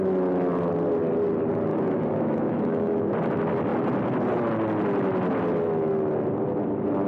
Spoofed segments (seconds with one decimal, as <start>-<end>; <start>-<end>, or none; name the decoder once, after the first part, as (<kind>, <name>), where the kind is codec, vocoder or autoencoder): 1.7-3.1 (autoencoder, DAC-VAE)